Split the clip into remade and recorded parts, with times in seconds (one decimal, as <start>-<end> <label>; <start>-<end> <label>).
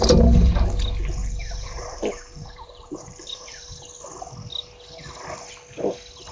0.0-1.2 recorded; 1.2-3.6 remade; 3.6-6.3 recorded